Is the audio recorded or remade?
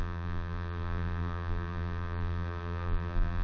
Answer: remade